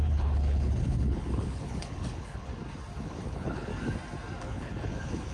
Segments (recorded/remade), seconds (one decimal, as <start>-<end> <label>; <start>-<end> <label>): 0.0-2.5 remade; 2.5-3.0 recorded; 3.0-3.7 remade; 3.7-4.4 recorded; 4.4-5.3 remade